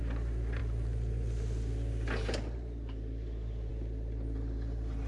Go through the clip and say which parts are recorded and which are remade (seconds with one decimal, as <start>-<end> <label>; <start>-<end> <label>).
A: 0.0-5.1 recorded